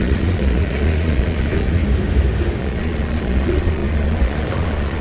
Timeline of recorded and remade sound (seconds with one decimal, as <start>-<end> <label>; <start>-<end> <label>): 0.0-1.8 remade; 1.8-2.6 recorded; 2.6-5.0 remade